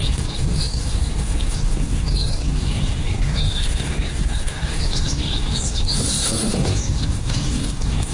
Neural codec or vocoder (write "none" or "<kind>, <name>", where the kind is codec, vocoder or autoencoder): codec, SNAC